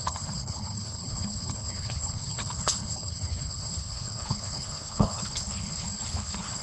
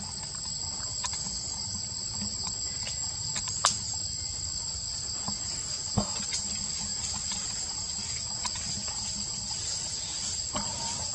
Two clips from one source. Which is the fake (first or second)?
first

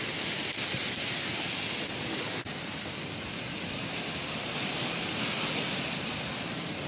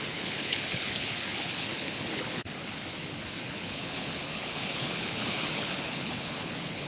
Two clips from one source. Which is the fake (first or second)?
second